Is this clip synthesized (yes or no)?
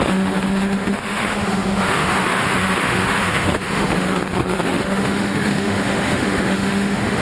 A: yes